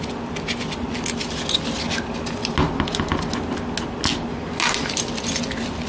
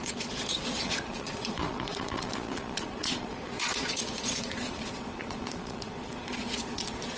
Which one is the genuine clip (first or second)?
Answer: first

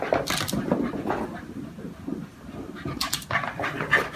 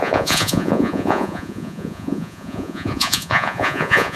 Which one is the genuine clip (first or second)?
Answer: first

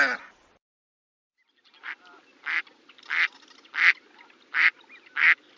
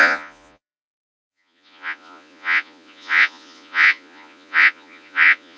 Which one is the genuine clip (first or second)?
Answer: first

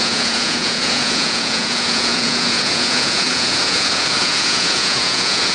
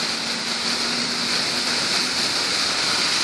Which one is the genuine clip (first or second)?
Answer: second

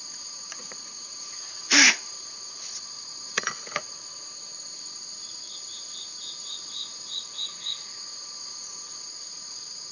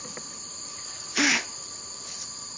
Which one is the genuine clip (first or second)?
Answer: second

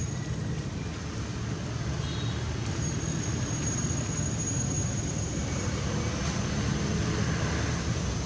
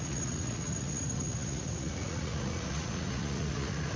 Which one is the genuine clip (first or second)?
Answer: first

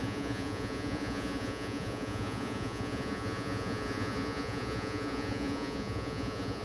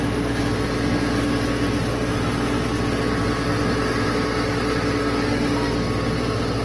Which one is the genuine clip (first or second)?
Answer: second